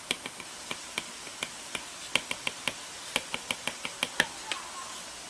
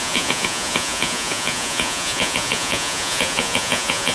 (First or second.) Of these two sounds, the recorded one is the first